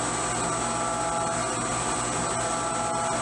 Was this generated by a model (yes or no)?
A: no